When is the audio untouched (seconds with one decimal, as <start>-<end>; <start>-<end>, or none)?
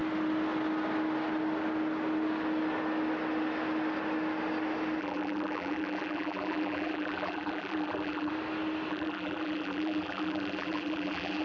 0.0-5.0; 8.3-8.9